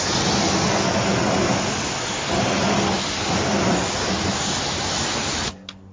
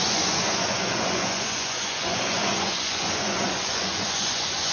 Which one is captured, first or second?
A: first